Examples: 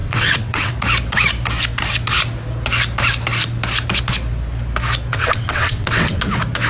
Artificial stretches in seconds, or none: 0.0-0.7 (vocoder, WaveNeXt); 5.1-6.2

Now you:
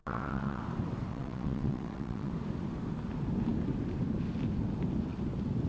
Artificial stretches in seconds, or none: 0.0-0.6 (vocoder, WaveNeXt); 1.1-2.3